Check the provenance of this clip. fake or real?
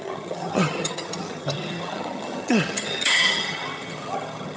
fake